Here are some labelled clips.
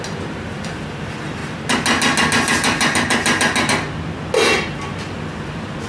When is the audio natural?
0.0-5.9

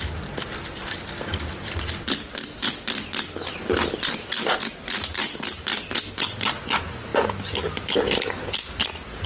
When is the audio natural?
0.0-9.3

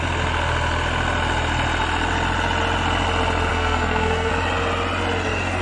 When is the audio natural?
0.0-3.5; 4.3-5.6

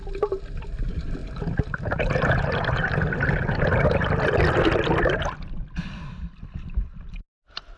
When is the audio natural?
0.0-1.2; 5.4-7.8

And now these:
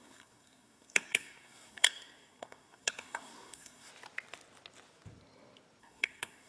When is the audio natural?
3.9-5.8

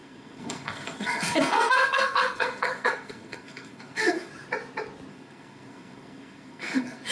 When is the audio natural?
4.3-5.1

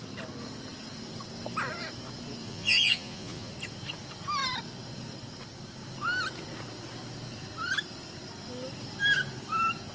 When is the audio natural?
0.0-2.4; 3.5-9.9